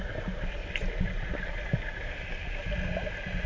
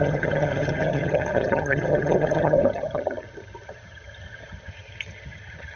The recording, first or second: first